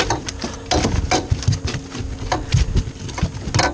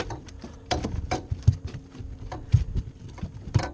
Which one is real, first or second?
first